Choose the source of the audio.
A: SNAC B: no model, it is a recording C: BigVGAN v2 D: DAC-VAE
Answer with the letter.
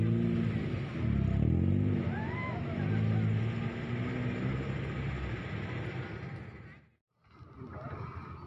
B